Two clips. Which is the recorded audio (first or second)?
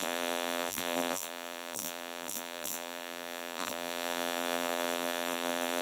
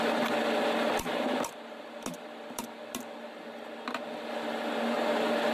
second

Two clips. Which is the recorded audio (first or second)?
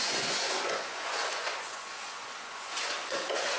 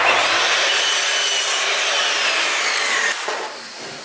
second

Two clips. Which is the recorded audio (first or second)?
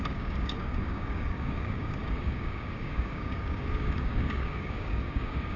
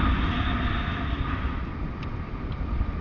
second